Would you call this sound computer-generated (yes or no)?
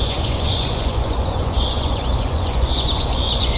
yes